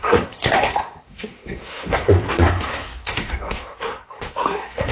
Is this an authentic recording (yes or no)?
no